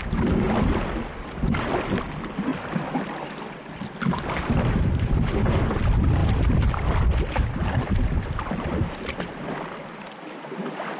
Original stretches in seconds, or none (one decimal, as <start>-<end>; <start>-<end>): 0.0-2.5; 4.2-6.2; 9.4-11.0